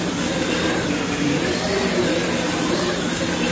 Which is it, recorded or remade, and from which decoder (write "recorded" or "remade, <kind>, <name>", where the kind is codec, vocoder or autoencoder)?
recorded